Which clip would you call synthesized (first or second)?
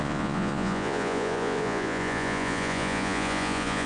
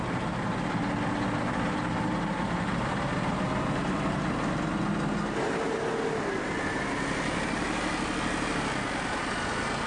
first